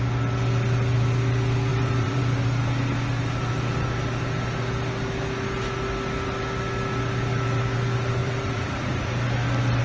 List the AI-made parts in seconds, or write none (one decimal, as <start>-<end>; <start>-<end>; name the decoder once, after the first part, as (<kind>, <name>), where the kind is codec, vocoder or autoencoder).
1.7-2.2 (vocoder, BigVGAN v2); 8.2-8.9